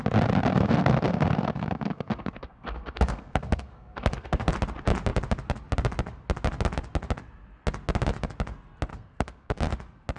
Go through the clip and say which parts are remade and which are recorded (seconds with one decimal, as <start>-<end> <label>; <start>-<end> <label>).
0.0-0.5 recorded; 0.5-4.5 remade; 4.5-8.9 recorded; 8.9-9.6 remade; 9.6-10.2 recorded